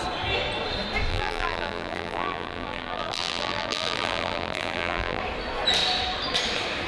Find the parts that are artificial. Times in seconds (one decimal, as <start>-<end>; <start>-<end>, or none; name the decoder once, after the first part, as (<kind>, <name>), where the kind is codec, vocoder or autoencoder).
1.1-5.2 (vocoder, BigVGAN v2)